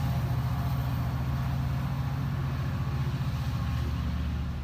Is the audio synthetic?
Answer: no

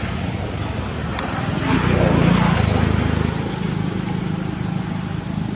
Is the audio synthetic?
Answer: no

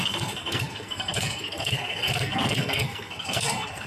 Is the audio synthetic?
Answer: yes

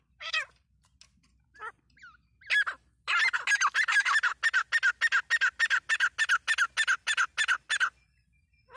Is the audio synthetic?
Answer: no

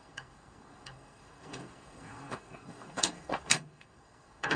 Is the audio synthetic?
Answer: yes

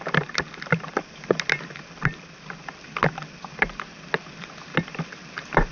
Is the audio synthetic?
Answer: no